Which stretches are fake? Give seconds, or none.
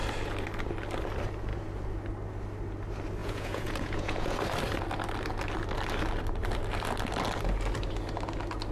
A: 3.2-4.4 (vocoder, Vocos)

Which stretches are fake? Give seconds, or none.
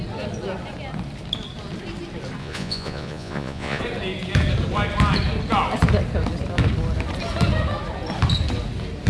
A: 2.4-3.8 (vocoder, Vocos)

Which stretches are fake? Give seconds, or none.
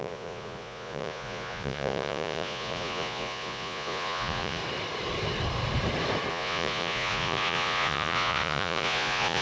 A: 0.0-4.6 (vocoder, Vocos); 6.3-9.4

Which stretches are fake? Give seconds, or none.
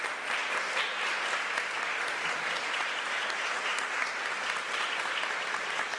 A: none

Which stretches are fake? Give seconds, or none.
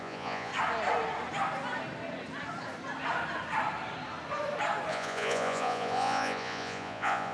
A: 0.0-0.5 (vocoder, Vocos); 4.9-7.3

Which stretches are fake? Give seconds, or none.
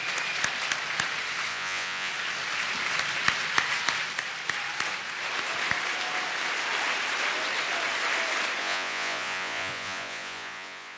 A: 1.5-2.1 (vocoder, Vocos); 8.6-11.0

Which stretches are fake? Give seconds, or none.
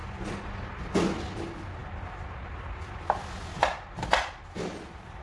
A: none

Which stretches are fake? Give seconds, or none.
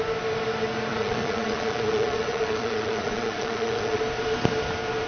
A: 0.9-4.0 (vocoder, Vocos)